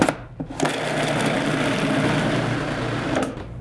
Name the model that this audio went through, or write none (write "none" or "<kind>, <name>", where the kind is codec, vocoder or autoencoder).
none